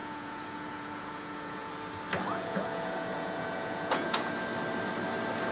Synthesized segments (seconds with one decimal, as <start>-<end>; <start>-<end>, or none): 0.0-1.7; 2.3-4.3